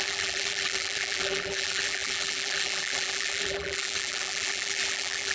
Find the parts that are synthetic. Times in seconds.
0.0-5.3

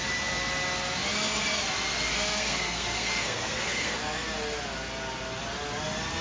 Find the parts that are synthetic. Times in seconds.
2.1-4.0

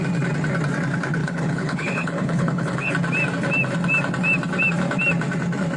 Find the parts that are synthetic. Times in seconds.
1.2-2.9

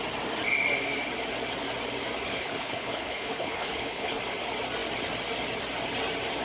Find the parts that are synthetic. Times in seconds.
2.3-4.2

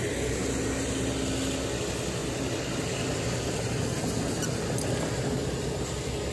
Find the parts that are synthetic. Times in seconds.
none

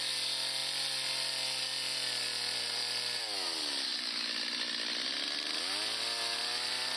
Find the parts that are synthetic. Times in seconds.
none

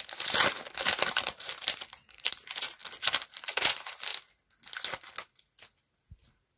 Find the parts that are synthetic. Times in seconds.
0.0-2.8; 3.4-4.1; 5.8-6.6

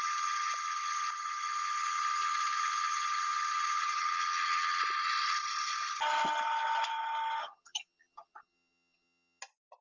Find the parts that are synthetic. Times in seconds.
3.8-4.8; 7.4-9.4